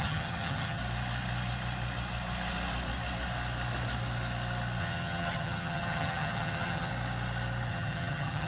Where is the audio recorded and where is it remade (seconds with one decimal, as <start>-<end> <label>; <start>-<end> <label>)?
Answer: 0.0-0.8 remade; 0.8-4.8 recorded; 4.8-6.9 remade; 6.9-7.7 recorded; 7.7-8.5 remade